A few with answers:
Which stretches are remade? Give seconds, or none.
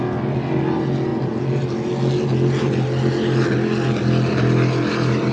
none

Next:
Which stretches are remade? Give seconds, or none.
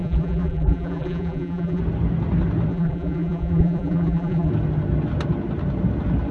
0.0-1.8 (vocoder, BigVGAN v2); 2.7-4.5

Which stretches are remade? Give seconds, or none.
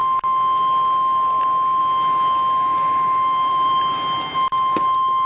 2.7-3.8 (vocoder, BigVGAN v2)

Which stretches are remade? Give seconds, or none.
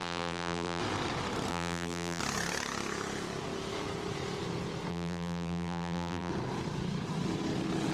0.0-0.8 (vocoder, BigVGAN v2); 1.5-2.2; 4.9-6.3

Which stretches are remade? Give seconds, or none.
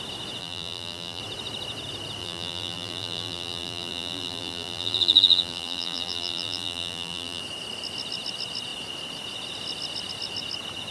0.4-1.2 (vocoder, BigVGAN v2); 2.2-7.4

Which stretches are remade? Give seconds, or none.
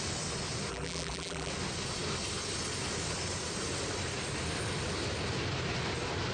0.7-1.5 (vocoder, BigVGAN v2)